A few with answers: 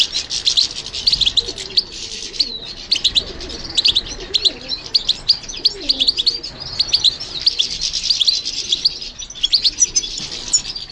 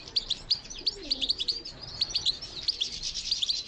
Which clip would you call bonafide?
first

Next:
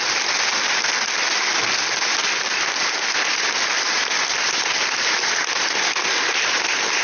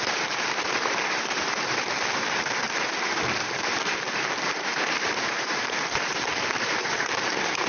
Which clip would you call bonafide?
first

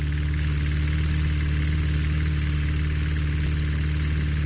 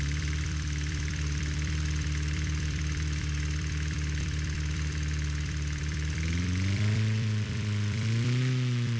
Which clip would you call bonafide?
first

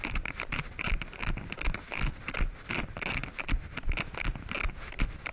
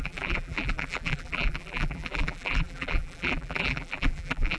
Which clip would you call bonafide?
first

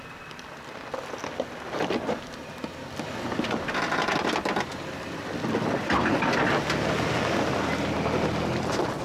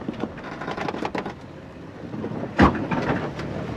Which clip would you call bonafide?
first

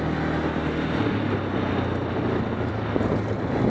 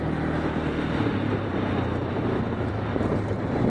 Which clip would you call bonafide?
first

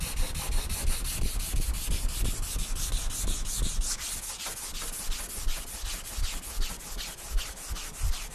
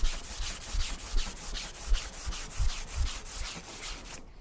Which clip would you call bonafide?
first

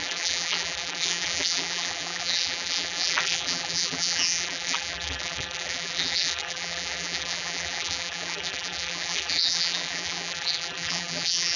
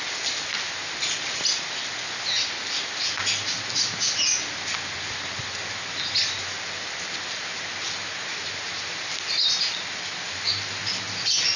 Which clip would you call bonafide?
second